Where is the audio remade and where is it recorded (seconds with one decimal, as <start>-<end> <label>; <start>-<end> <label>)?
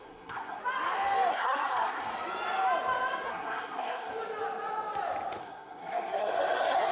0.0-0.6 remade; 0.6-1.3 recorded; 1.3-2.1 remade; 2.1-3.3 recorded; 3.3-4.1 remade; 4.1-5.4 recorded; 5.4-6.9 remade